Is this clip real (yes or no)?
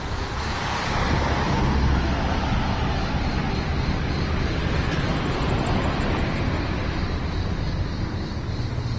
yes